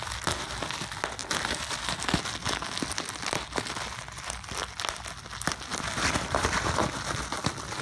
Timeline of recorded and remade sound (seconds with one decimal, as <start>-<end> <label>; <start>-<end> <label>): 0.0-7.8 recorded